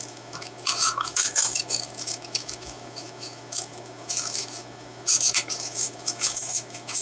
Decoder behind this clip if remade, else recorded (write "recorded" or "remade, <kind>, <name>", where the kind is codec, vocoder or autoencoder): remade, autoencoder, DAC-VAE